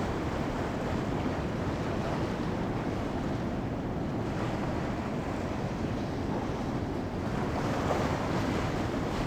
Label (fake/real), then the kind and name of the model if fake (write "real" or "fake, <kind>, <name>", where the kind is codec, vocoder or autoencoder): real